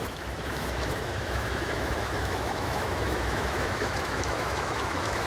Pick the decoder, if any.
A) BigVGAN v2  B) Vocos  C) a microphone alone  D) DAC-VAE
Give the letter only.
D